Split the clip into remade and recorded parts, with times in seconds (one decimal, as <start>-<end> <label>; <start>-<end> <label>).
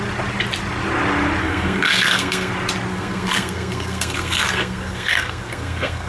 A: 0.0-1.4 recorded; 1.4-2.5 remade; 2.5-2.9 recorded; 2.9-6.1 remade